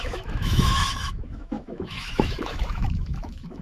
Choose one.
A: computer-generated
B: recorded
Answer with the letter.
A